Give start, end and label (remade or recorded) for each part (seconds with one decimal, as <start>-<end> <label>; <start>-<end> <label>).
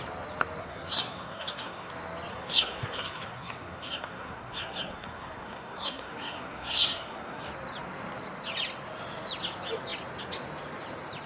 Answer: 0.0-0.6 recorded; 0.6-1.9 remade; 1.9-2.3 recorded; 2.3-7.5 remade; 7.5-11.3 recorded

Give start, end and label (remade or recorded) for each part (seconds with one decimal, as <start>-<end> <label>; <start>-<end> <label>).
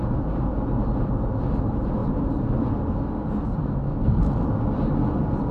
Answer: 0.0-3.6 recorded; 3.6-4.2 remade; 4.2-5.5 recorded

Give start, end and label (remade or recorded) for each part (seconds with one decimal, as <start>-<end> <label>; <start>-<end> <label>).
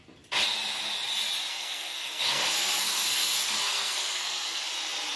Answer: 0.0-1.5 recorded; 1.5-4.6 remade; 4.6-5.2 recorded